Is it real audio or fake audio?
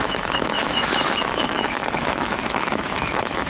fake